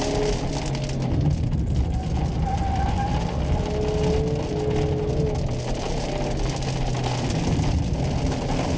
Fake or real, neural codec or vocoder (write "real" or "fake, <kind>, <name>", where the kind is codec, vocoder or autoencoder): real